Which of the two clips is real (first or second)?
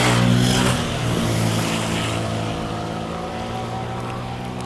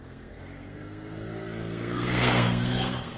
first